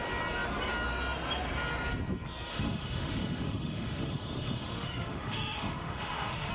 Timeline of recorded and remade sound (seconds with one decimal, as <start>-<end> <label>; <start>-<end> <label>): 0.0-2.5 recorded; 2.5-6.5 remade